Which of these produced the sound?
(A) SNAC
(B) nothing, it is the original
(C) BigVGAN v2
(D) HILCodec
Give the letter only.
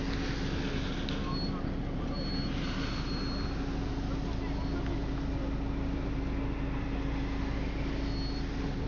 B